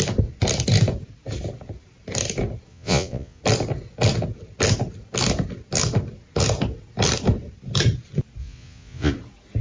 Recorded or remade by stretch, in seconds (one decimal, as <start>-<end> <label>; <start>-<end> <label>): 0.0-2.7 recorded; 2.7-3.4 remade; 3.4-8.4 recorded; 8.4-9.1 remade; 9.1-9.6 recorded